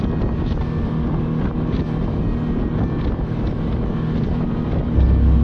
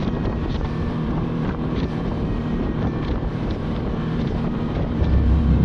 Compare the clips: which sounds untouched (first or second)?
first